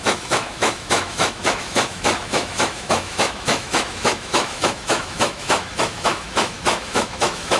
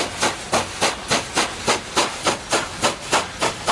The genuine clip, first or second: second